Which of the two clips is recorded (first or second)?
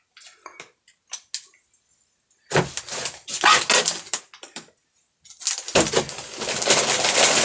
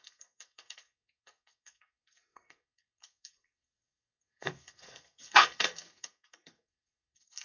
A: first